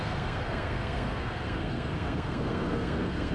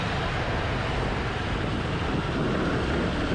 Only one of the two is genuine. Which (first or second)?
second